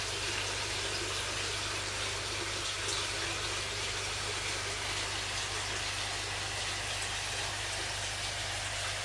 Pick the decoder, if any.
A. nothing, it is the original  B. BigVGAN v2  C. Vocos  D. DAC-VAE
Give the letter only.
A